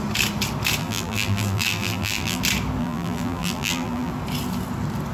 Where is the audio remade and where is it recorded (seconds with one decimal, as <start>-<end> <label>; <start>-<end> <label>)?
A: 0.0-0.8 recorded; 0.8-2.4 remade; 2.4-2.8 recorded; 2.8-4.1 remade; 4.1-5.1 recorded